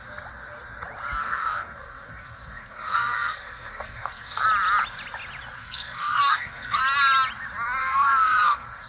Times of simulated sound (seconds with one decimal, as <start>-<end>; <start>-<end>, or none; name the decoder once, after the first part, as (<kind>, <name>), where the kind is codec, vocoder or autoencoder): 1.2-4.4 (codec, SNAC); 5.6-6.8; 7.8-8.9